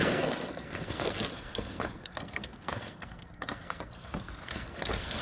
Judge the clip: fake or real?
fake